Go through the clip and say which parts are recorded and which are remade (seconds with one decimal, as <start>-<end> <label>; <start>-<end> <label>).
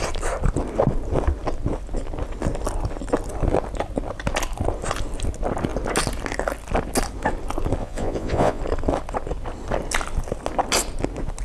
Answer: 0.0-7.8 recorded; 7.8-8.6 remade; 8.6-11.4 recorded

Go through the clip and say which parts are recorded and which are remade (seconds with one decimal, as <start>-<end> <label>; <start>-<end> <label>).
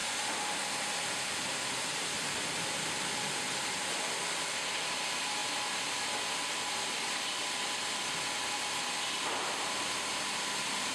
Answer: 0.0-10.9 recorded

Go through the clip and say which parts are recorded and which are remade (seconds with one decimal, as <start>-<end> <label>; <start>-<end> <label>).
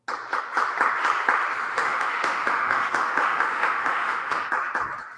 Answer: 0.0-1.7 recorded; 1.7-4.5 remade; 4.5-5.2 recorded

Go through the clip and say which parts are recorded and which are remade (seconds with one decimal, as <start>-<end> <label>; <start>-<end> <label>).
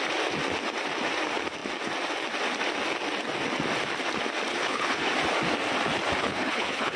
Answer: 0.0-4.5 recorded; 4.5-5.1 remade; 5.1-6.2 recorded; 6.2-7.0 remade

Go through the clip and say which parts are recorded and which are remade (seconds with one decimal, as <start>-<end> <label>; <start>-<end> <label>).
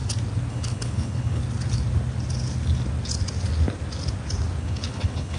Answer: 0.0-0.5 recorded; 0.5-1.4 remade; 1.4-4.6 recorded; 4.6-5.4 remade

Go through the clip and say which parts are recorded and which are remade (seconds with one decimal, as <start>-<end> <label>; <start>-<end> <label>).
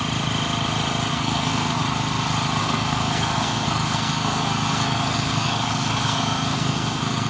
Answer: 0.0-1.1 recorded; 1.1-1.8 remade; 1.8-2.6 recorded; 2.6-7.3 remade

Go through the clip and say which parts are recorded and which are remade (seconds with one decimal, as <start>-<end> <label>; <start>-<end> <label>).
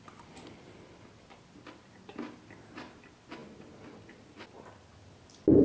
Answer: 0.0-5.6 recorded